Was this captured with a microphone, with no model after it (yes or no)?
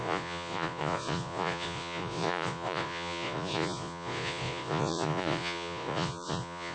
no